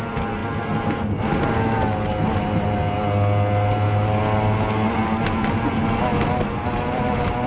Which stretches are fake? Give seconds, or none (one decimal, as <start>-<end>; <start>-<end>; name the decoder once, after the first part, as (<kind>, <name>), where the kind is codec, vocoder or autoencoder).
none